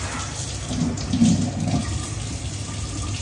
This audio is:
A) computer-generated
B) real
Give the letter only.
B